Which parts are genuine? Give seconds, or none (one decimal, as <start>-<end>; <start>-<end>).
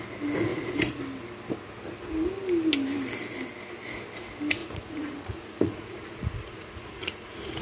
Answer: 0.0-0.5; 1.0-4.6